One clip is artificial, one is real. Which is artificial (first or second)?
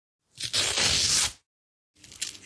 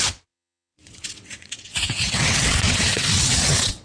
second